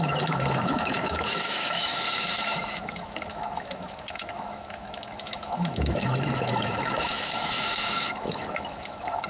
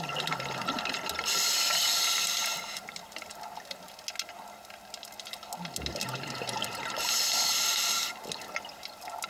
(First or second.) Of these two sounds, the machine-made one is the first